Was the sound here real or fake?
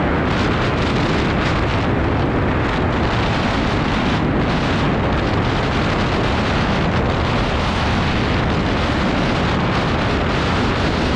real